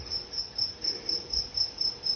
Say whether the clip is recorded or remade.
remade